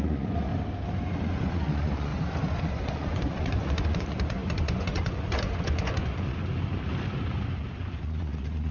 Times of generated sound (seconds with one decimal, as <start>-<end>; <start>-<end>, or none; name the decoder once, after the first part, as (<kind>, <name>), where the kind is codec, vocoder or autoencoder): 0.0-0.5 (vocoder, Vocos); 1.2-2.1; 2.6-6.4; 8.0-8.7